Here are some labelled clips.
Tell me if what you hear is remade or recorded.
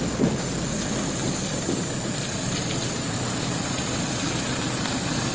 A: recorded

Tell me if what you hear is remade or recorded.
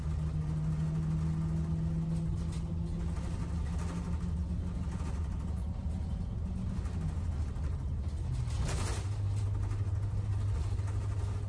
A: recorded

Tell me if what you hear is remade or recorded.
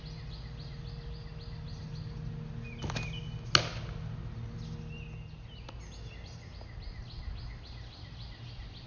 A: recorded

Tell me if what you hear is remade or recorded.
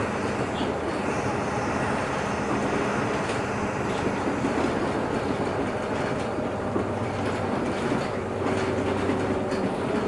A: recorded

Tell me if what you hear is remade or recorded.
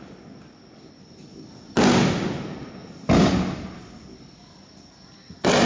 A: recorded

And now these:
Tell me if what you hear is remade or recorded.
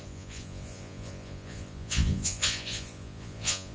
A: remade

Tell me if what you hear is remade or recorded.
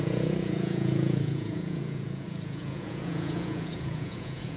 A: remade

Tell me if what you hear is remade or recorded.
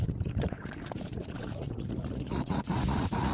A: remade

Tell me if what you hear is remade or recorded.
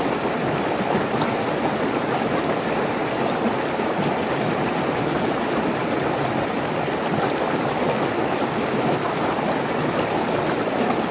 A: recorded